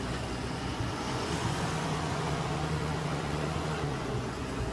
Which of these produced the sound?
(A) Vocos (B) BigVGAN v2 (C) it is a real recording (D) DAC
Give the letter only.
A